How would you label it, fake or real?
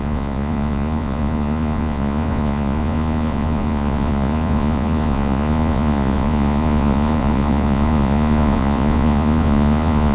fake